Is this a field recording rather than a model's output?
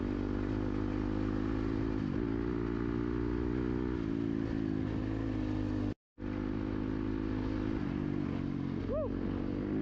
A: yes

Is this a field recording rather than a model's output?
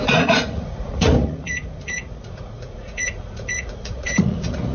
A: no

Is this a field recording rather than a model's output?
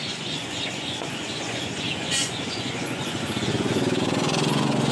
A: no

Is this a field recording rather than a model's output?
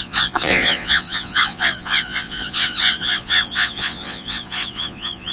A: no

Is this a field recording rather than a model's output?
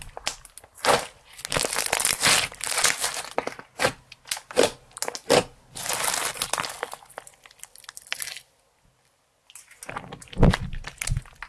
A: yes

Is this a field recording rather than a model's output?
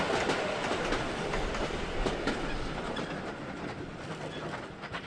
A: yes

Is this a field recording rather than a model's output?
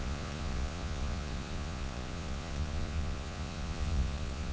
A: no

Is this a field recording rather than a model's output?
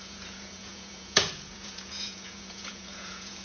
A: no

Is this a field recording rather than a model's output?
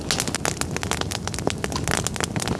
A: yes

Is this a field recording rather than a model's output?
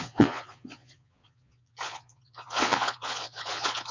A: no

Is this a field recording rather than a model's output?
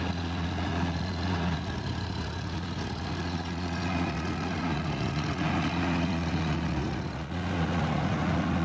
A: no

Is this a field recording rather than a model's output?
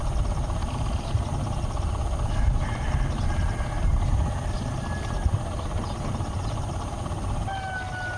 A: yes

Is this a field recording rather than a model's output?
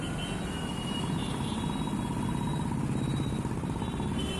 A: yes